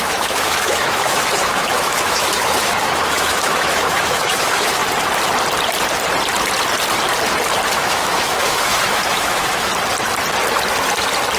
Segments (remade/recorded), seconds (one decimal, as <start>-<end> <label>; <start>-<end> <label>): 0.0-4.8 remade; 4.8-7.7 recorded; 7.7-9.7 remade; 9.7-11.4 recorded